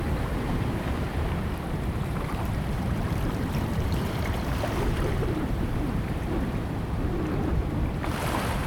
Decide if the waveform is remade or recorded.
remade